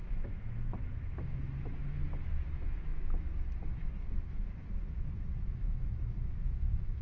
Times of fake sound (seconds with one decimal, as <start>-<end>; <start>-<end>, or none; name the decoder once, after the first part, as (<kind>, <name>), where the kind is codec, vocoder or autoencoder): 0.0-7.0 (autoencoder, DAC-VAE)